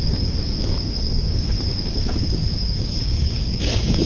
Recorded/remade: remade